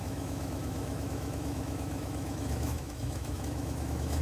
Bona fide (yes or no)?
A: no